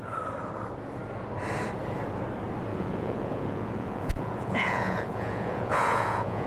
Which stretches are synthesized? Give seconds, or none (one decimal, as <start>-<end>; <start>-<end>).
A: 2.7-6.5